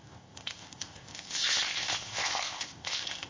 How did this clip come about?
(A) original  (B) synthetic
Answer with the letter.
B